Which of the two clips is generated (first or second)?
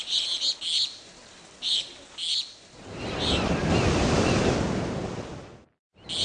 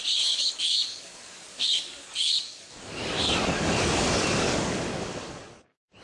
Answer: second